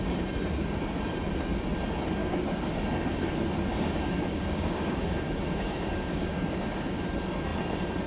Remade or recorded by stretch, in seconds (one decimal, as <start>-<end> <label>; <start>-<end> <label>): 0.0-2.2 recorded; 2.2-2.7 remade; 2.7-3.7 recorded; 3.7-7.0 remade; 7.0-8.1 recorded